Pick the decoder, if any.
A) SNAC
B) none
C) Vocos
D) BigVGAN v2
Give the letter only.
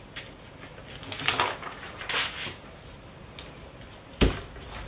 B